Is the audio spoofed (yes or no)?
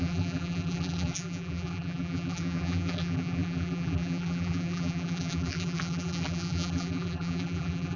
yes